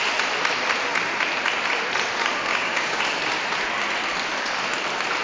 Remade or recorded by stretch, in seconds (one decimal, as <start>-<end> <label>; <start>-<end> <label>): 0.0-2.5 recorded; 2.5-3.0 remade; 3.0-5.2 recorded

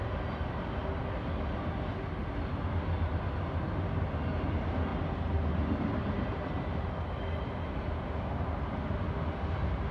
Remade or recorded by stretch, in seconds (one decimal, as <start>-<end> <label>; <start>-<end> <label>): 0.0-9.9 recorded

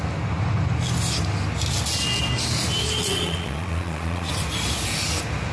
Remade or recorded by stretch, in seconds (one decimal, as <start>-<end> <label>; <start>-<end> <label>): 0.0-3.0 recorded; 3.0-4.3 remade; 4.3-5.5 recorded